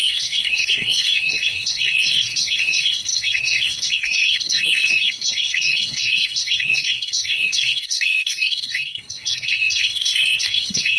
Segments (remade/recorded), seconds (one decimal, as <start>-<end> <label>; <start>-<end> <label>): 0.0-11.0 remade